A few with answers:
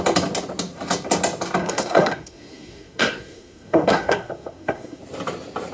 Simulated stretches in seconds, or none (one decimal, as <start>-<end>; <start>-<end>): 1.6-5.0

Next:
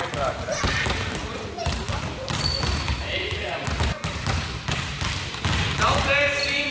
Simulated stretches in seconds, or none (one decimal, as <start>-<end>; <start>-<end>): none

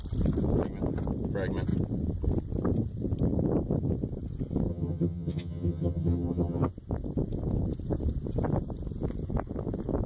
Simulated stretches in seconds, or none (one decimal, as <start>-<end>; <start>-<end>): 4.7-6.7

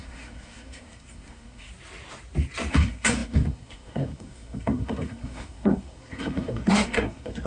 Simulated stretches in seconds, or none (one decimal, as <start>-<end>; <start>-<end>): 0.0-1.7; 2.7-7.5

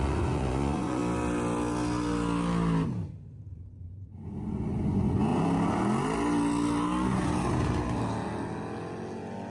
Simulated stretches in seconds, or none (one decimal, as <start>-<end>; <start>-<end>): 0.0-1.0; 3.5-5.3

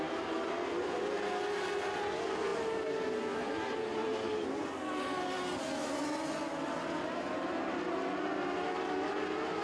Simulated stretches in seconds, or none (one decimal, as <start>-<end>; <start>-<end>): none